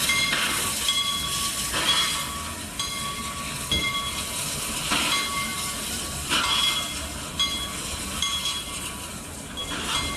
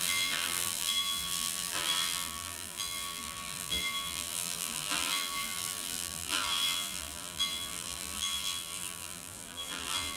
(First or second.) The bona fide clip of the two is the first